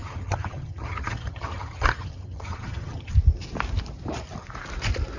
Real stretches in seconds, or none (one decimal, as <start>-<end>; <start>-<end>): 3.1-5.2